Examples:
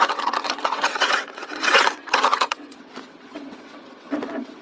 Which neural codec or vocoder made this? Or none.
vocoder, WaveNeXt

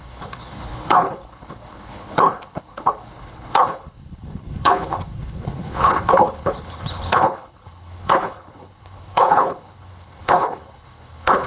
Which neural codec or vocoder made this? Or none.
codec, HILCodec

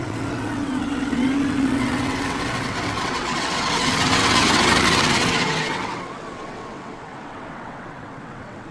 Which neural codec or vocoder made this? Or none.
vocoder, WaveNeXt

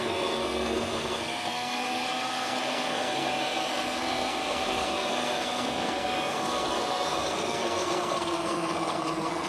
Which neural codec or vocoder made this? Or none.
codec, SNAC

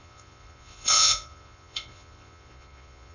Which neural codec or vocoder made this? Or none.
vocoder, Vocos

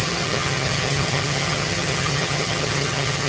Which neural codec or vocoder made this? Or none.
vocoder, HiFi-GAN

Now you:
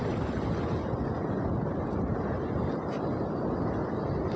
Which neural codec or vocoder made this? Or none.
vocoder, BigVGAN v2